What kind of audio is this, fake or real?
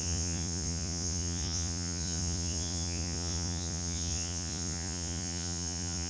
fake